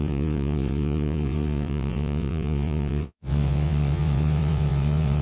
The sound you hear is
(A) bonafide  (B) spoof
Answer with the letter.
B